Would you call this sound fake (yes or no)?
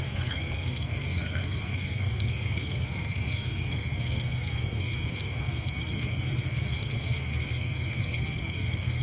yes